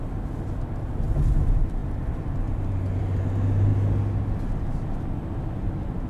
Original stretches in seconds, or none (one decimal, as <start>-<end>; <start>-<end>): 0.0-1.8; 3.2-6.1